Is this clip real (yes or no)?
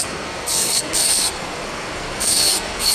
no